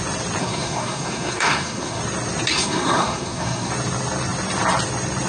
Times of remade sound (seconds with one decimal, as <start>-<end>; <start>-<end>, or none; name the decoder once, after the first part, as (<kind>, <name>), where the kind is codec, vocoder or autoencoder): 0.4-2.0 (codec, SNAC); 2.5-3.7